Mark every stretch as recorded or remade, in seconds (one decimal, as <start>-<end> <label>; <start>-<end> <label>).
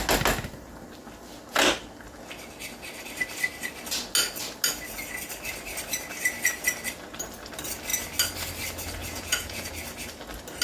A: 0.0-9.0 recorded; 9.0-9.7 remade; 9.7-10.6 recorded